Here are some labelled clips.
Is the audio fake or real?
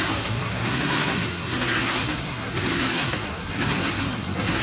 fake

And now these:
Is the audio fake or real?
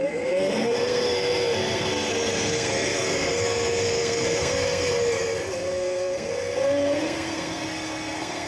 fake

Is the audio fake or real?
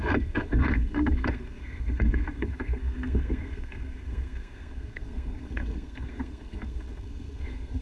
fake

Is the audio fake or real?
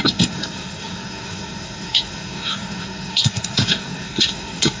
fake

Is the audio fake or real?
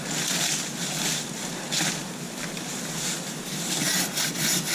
real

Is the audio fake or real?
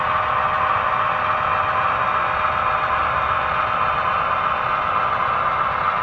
real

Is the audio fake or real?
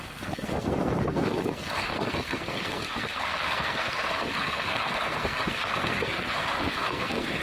fake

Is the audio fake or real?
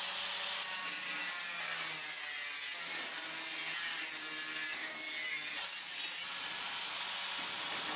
real